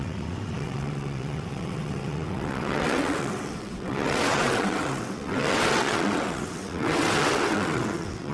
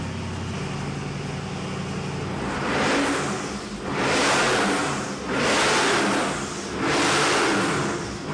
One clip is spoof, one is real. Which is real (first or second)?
second